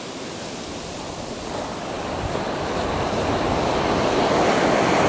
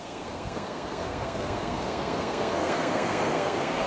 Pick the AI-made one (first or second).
second